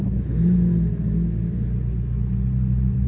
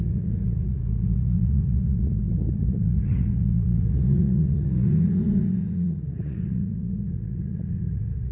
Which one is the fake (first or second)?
second